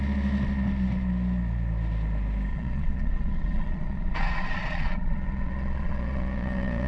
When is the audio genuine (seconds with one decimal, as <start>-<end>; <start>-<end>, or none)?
0.0-2.5